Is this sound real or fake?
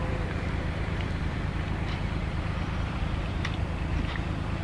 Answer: fake